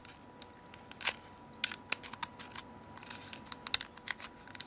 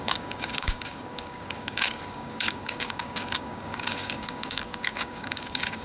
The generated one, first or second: second